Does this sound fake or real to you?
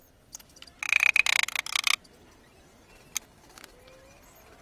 real